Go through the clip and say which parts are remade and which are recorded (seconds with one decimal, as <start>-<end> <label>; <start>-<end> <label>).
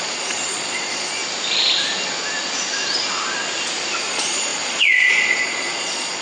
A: 0.0-1.2 remade; 1.2-4.0 recorded; 4.0-6.2 remade